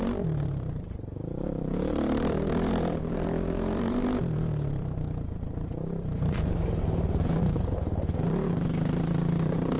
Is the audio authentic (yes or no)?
no